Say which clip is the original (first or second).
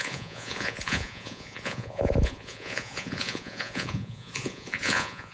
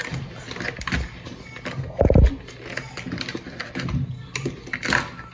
second